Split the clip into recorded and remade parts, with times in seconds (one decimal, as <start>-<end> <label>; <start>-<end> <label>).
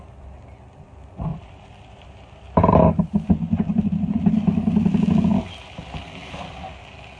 0.0-1.3 recorded; 1.3-3.6 remade; 3.6-5.3 recorded; 5.3-5.8 remade; 5.8-7.2 recorded